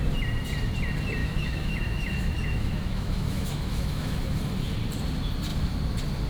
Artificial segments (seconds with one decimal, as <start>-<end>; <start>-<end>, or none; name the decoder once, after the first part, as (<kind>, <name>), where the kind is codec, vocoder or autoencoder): 1.2-4.4 (autoencoder, DAC-VAE)